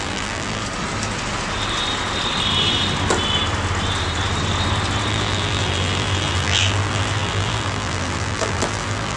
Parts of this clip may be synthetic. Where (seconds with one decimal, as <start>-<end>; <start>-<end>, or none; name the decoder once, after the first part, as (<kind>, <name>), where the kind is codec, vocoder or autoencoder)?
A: 0.0-0.6 (vocoder, BigVGAN v2); 5.1-9.2